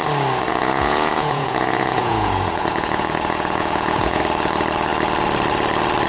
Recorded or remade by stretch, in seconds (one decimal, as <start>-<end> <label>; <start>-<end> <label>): 0.0-0.5 recorded; 0.5-4.2 remade; 4.2-6.1 recorded